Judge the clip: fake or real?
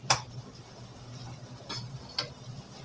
real